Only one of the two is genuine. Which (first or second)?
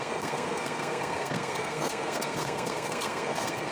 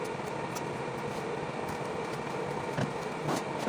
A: second